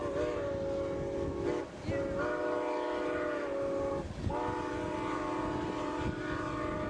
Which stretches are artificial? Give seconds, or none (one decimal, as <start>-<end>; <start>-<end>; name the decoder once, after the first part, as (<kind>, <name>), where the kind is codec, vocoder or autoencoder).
none